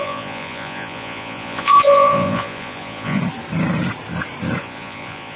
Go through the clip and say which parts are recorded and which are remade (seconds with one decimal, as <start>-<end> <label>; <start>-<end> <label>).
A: 0.0-3.2 remade; 3.2-4.6 recorded; 4.6-5.4 remade